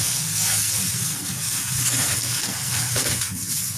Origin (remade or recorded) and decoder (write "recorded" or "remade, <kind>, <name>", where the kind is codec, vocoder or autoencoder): remade, codec, SNAC